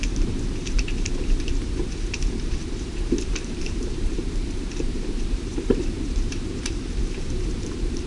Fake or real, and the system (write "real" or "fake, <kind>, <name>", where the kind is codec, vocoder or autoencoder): fake, vocoder, BigVGAN v2